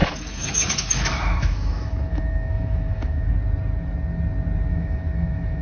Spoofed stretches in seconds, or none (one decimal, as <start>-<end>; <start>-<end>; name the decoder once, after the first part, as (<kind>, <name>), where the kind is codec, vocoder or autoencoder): 0.0-3.3 (autoencoder, DAC-VAE); 4.7-5.6